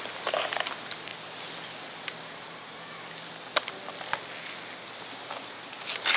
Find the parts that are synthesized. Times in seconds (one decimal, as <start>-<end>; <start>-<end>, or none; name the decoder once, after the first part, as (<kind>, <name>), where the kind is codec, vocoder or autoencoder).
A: none